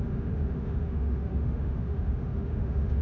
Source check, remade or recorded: remade